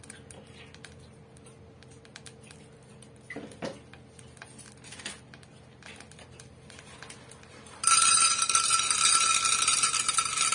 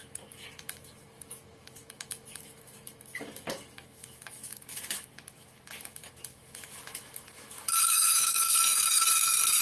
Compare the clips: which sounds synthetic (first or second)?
second